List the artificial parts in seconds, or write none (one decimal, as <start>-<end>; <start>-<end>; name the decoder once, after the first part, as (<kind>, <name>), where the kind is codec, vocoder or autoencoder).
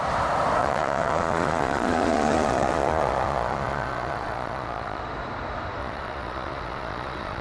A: 0.6-5.0 (vocoder, Vocos); 5.8-7.4